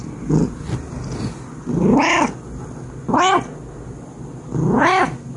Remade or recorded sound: recorded